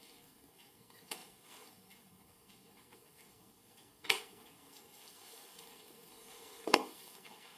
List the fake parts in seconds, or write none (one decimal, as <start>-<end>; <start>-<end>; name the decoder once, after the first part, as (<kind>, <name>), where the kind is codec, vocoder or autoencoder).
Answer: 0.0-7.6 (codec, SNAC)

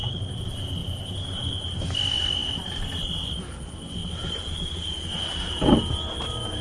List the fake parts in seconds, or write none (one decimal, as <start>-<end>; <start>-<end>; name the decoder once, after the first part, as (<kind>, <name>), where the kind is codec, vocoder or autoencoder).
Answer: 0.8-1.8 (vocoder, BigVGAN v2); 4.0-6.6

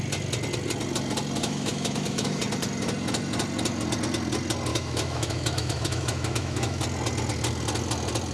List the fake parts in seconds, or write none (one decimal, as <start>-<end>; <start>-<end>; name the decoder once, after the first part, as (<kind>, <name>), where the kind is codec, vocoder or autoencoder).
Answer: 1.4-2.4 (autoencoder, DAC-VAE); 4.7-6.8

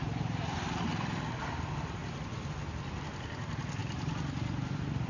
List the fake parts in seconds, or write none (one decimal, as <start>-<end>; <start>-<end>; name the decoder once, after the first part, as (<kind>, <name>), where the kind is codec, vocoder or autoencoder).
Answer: none

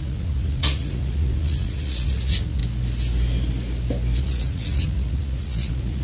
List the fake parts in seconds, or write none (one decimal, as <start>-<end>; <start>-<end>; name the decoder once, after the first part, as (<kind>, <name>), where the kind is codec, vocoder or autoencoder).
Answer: 0.0-2.6 (vocoder, Vocos); 4.2-6.0

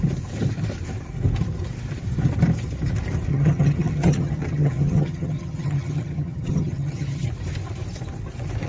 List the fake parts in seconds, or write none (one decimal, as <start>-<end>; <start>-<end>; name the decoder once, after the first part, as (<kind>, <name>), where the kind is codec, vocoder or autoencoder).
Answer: 3.3-7.3 (vocoder, HiFi-GAN)